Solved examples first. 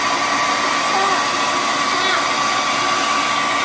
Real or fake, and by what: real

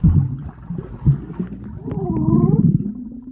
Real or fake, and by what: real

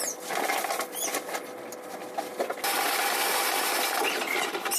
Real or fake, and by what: real